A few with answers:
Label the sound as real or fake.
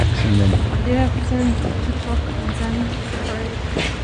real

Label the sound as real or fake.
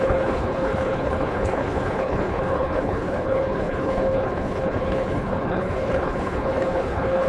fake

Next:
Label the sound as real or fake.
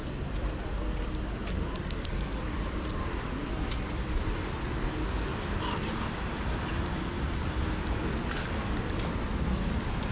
real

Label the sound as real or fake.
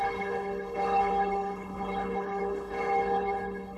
fake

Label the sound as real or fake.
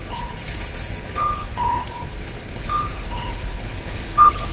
fake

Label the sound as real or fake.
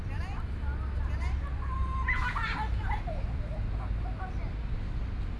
real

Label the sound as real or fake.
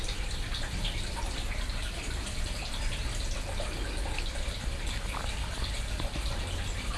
real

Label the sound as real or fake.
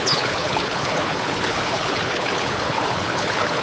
fake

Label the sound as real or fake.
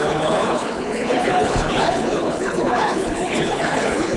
fake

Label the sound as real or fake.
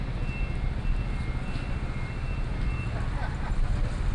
real